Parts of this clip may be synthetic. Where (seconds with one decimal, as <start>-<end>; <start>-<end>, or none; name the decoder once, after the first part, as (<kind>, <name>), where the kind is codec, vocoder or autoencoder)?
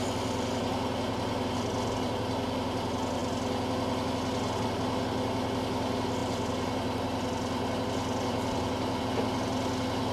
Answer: none